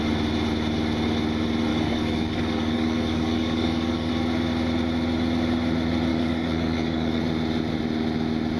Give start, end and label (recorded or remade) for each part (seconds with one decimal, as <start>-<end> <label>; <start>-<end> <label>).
0.0-1.7 recorded; 1.7-4.1 remade; 4.1-6.1 recorded; 6.1-7.2 remade; 7.2-8.6 recorded